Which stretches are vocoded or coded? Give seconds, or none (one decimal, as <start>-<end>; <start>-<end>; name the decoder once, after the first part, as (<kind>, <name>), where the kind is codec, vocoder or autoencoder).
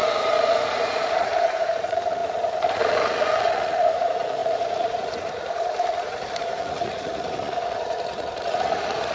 0.0-9.1 (vocoder, Vocos)